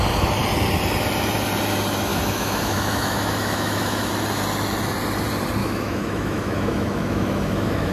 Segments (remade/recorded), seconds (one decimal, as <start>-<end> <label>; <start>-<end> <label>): 0.0-2.1 recorded; 2.1-4.1 remade; 4.1-5.6 recorded; 5.6-7.9 remade